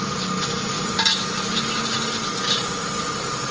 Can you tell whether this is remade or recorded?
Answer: recorded